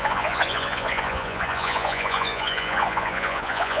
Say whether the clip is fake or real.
fake